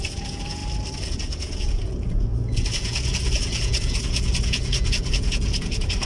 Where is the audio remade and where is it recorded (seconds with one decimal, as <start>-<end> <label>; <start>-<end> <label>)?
0.0-0.6 remade; 0.6-1.1 recorded; 1.1-6.1 remade